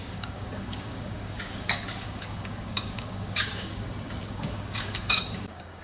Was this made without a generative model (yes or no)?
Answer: no